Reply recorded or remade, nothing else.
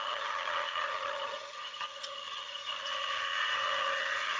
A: remade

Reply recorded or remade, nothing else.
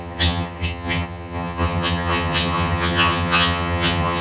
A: remade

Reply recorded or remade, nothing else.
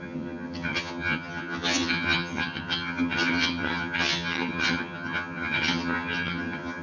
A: remade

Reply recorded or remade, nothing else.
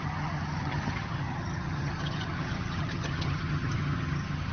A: remade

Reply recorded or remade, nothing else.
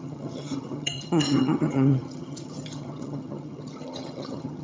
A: remade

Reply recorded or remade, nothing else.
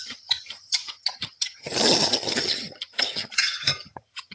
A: remade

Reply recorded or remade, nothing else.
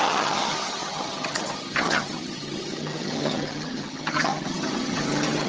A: remade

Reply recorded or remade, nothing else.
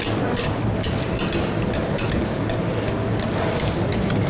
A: recorded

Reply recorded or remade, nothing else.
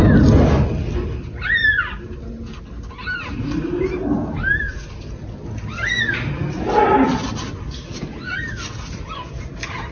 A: recorded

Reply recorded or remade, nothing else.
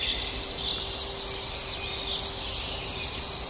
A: recorded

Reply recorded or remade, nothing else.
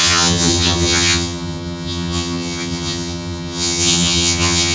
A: remade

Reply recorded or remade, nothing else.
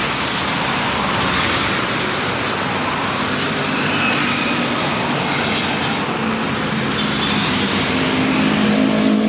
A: recorded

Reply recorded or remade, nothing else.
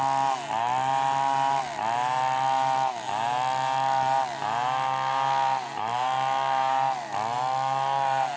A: recorded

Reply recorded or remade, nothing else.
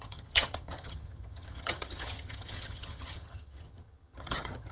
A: remade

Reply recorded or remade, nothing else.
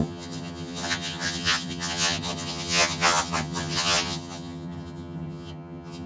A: remade